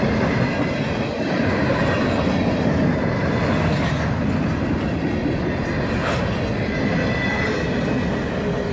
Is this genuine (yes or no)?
yes